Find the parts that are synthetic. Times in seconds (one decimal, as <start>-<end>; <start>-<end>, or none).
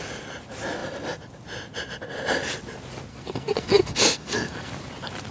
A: 3.1-4.7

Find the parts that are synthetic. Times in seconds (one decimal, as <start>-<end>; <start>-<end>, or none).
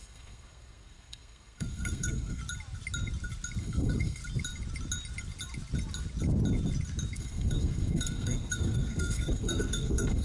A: 0.0-2.4; 3.6-4.2; 7.2-10.2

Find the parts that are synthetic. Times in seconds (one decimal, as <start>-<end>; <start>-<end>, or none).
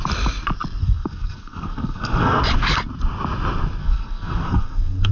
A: 0.8-2.4; 3.8-5.1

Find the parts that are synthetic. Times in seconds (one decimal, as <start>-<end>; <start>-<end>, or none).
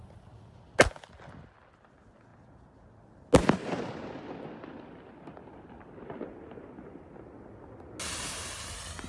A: none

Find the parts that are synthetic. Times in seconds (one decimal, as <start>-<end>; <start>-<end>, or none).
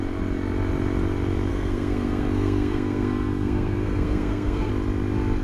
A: 1.5-4.7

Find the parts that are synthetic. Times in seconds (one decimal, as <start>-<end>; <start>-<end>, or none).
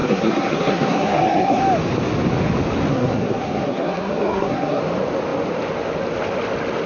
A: 0.0-1.6; 2.9-4.8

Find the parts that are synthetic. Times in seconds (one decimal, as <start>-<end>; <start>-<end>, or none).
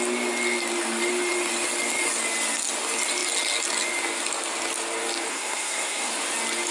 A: 5.3-6.1